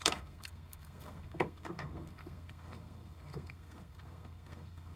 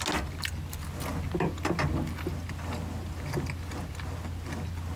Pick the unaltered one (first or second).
second